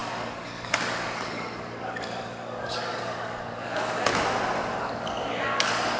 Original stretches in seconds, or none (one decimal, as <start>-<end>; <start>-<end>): 4.1-4.7